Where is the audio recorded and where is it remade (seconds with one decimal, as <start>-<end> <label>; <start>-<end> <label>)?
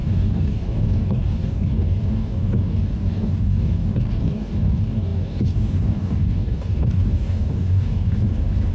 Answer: 0.0-8.7 remade